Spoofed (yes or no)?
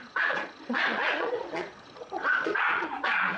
yes